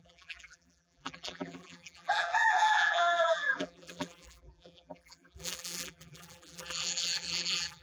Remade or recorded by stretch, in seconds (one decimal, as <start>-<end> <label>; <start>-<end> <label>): 0.0-7.8 remade